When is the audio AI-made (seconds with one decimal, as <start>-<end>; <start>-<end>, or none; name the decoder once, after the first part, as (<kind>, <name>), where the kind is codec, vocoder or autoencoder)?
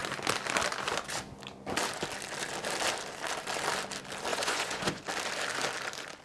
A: 4.3-5.0 (vocoder, Vocos)